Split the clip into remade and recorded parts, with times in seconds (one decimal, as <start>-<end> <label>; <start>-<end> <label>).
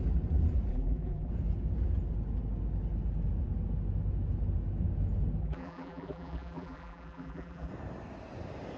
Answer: 0.0-0.7 recorded; 0.7-1.3 remade; 1.3-5.4 recorded; 5.4-7.7 remade; 7.7-8.8 recorded